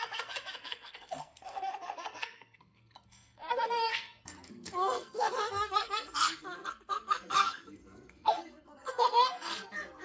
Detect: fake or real fake